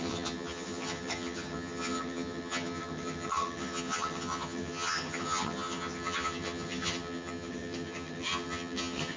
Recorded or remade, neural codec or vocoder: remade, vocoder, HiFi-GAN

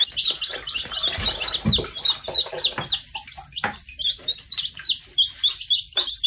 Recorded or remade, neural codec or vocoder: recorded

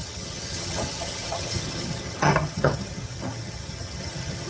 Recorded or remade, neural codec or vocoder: remade, vocoder, HiFi-GAN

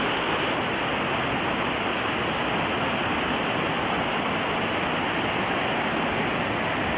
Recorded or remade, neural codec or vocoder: recorded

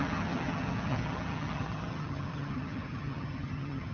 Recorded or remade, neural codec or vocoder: remade, vocoder, HiFi-GAN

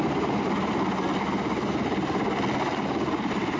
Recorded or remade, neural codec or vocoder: recorded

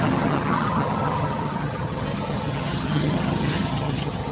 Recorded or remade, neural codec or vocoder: remade, vocoder, HiFi-GAN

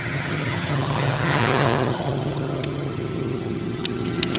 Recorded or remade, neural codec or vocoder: remade, vocoder, HiFi-GAN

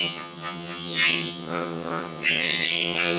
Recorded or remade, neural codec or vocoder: remade, vocoder, HiFi-GAN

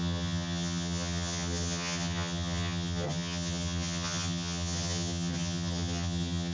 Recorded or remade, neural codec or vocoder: remade, vocoder, HiFi-GAN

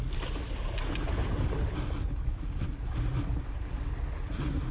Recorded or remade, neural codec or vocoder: recorded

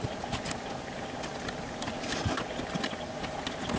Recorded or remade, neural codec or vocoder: recorded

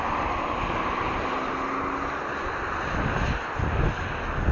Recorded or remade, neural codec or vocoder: recorded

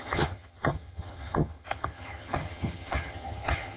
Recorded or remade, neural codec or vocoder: remade, vocoder, HiFi-GAN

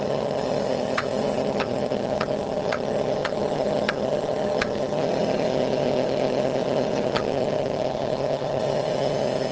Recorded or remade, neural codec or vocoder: remade, vocoder, HiFi-GAN